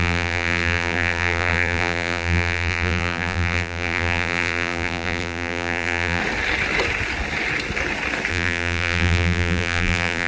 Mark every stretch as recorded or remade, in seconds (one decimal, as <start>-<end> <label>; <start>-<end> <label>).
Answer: 0.0-6.2 remade; 6.2-8.3 recorded; 8.3-10.3 remade